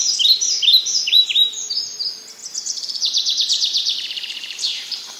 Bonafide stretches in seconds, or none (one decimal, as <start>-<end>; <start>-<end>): 0.0-0.7; 1.7-2.4